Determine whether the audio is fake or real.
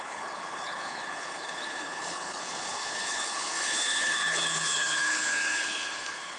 fake